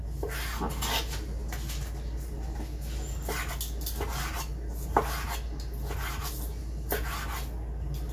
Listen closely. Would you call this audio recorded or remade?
recorded